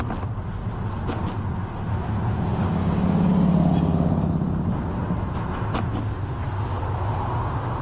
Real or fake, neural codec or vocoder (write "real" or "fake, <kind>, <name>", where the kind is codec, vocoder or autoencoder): real